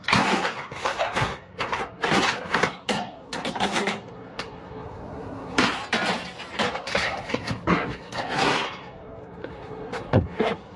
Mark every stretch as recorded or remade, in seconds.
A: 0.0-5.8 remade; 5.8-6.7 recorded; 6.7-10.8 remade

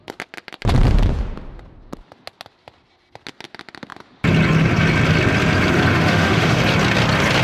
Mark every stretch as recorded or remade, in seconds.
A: 0.0-5.9 recorded; 5.9-6.6 remade; 6.6-7.4 recorded

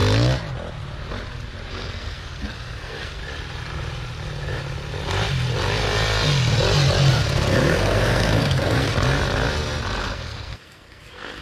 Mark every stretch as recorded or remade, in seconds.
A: 0.0-1.7 recorded; 1.7-3.2 remade; 3.2-7.1 recorded; 7.1-8.9 remade; 8.9-10.0 recorded; 10.0-11.4 remade

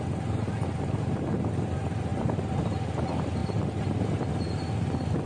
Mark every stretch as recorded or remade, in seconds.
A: 0.0-2.1 recorded; 2.1-2.6 remade; 2.6-3.4 recorded; 3.4-4.3 remade; 4.3-5.3 recorded

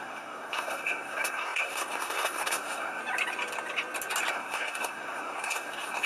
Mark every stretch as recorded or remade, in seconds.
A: 0.0-3.0 remade; 3.0-4.3 recorded; 4.3-6.1 remade